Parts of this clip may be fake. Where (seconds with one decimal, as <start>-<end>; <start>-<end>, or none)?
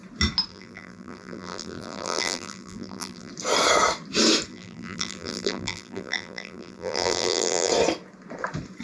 0.5-3.3; 4.5-7.7